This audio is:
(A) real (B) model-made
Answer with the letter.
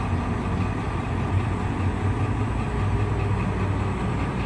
A